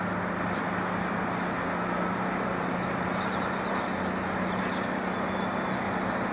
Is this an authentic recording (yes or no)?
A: yes